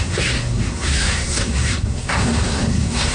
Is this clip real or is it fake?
fake